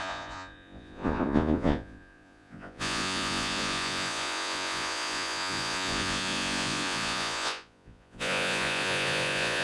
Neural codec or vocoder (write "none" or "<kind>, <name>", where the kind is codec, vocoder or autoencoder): vocoder, Vocos